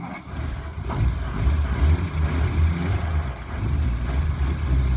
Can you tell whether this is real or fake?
real